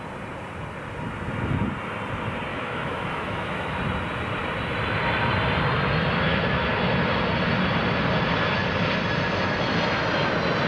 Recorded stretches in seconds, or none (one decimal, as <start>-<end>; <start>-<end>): 0.0-2.5; 3.8-10.7